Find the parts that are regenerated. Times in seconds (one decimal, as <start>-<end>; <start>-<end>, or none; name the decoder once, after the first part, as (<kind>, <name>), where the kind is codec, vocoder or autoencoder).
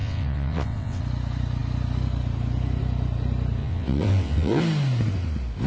0.0-1.0 (vocoder, WaveNeXt); 3.6-4.6